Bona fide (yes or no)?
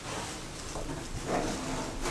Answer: yes